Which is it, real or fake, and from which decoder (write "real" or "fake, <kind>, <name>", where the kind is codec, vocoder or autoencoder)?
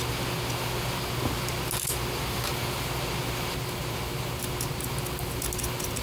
real